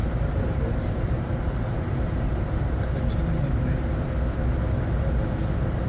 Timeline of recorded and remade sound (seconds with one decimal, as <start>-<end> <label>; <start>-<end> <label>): 0.0-2.8 remade; 2.8-5.9 recorded